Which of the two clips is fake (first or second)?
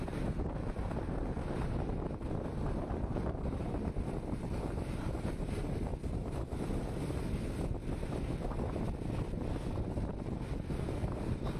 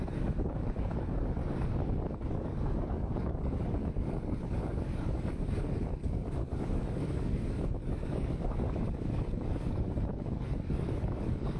second